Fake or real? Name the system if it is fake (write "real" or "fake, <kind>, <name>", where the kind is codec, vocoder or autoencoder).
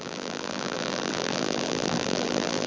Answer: fake, vocoder, BigVGAN v2